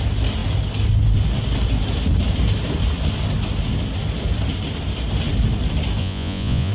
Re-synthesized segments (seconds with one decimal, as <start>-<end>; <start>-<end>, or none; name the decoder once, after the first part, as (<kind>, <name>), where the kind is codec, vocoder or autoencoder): 6.0-6.7 (vocoder, Vocos)